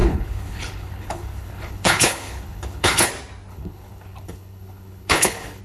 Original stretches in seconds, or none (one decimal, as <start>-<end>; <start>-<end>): 3.1-3.5